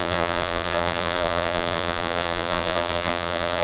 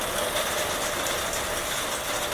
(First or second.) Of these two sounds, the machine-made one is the first